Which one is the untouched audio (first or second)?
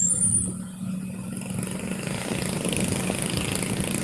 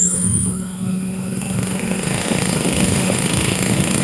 first